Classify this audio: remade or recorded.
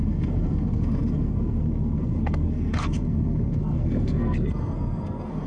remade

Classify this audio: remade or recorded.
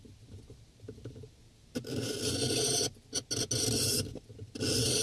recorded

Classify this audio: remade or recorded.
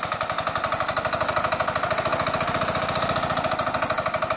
recorded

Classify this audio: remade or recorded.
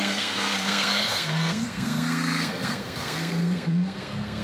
remade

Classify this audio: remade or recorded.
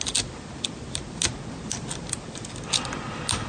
recorded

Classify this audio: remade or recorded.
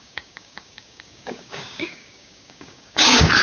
remade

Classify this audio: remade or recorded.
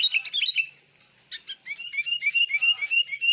recorded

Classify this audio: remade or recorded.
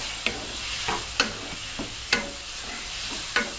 recorded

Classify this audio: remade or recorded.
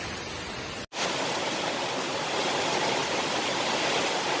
recorded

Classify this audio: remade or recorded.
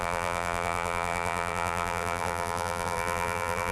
remade